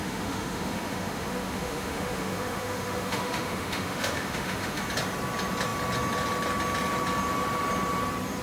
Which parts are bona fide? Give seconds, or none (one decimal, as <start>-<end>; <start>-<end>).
4.8-8.4